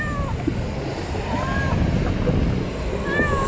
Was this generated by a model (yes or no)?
no